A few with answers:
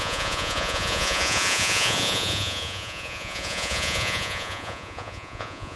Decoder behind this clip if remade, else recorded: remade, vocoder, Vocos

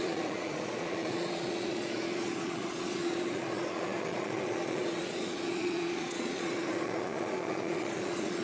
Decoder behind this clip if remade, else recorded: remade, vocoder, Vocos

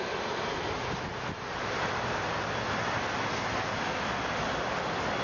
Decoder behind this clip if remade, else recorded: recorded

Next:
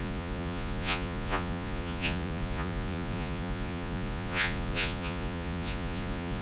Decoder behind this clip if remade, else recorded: remade, vocoder, Vocos